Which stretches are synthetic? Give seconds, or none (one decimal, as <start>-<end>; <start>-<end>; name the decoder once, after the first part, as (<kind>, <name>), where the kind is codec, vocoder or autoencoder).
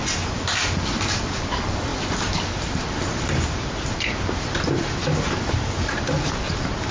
none